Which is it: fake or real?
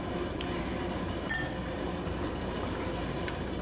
real